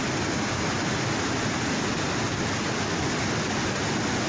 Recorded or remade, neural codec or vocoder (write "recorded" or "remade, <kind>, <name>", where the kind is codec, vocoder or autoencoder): recorded